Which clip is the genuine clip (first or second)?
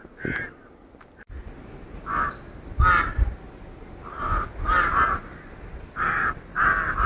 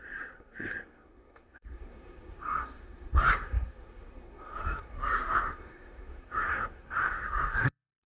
first